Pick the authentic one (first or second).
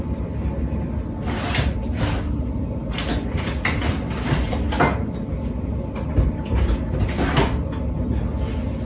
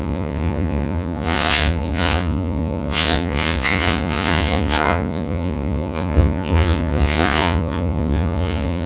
first